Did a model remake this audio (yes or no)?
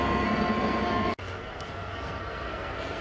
yes